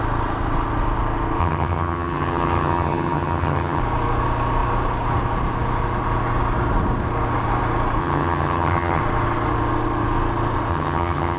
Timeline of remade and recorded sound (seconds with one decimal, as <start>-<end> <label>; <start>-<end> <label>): 0.0-1.4 recorded; 1.4-3.8 remade; 3.8-8.0 recorded; 8.0-9.0 remade; 9.0-10.7 recorded; 10.7-11.4 remade